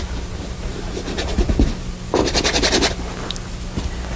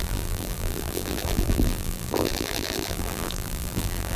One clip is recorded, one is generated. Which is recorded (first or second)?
first